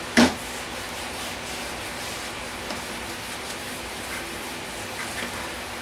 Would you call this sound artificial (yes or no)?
no